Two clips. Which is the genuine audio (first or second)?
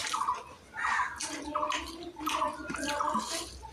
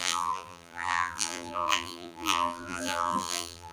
first